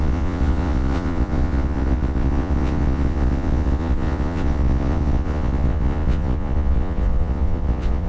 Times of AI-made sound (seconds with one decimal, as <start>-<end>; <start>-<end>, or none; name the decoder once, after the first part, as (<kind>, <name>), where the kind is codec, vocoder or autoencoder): 0.0-8.1 (vocoder, Vocos)